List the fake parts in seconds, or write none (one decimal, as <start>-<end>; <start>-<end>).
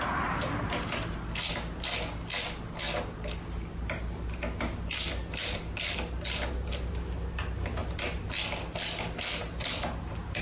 none